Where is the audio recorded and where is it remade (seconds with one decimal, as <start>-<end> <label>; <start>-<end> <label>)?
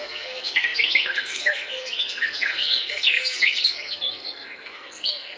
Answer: 0.0-5.4 remade